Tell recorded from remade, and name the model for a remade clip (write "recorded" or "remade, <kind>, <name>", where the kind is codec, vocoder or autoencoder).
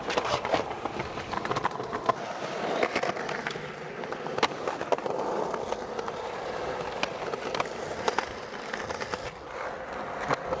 recorded